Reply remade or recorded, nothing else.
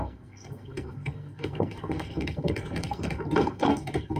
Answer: remade